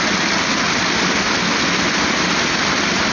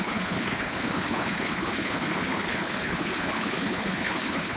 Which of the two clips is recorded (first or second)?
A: first